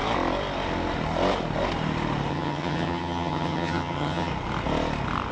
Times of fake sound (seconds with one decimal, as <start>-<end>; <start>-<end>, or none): 2.3-4.3